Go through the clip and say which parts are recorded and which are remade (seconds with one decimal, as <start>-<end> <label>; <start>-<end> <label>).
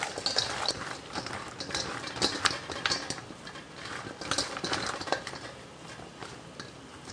0.0-7.1 recorded